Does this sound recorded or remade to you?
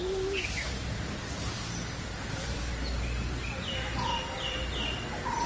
recorded